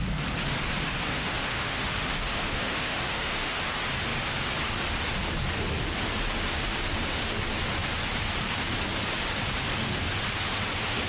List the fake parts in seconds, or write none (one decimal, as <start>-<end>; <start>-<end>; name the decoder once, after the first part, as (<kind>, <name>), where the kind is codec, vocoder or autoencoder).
0.9-3.6 (autoencoder, DAC-VAE)